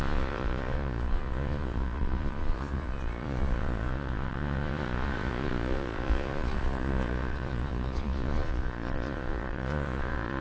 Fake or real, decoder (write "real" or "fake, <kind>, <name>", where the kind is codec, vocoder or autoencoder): fake, vocoder, Vocos